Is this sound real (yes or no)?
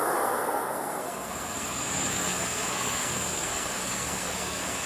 no